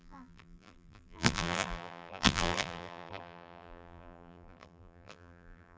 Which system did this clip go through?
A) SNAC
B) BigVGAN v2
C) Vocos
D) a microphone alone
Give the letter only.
B